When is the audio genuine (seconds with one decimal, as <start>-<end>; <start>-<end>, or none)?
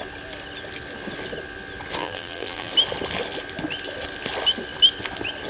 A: 0.0-2.0; 2.7-5.5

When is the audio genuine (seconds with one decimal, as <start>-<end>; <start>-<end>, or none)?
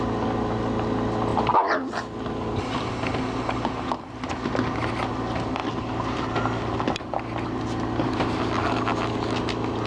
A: 0.0-9.9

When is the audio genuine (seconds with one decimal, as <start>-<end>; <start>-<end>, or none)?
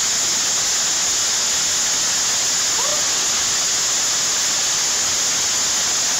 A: 0.0-6.2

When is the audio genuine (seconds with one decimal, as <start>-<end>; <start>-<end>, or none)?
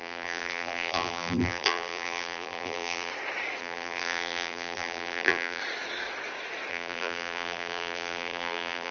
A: 3.1-3.6; 5.6-6.7